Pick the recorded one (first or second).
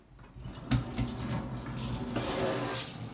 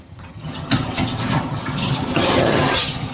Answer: first